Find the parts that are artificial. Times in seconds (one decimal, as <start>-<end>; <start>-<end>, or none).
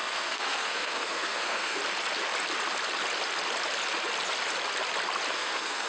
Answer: 0.0-1.8; 5.3-5.9